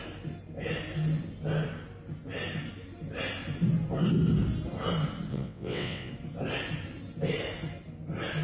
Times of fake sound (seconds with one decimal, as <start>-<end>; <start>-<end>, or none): 5.3-6.1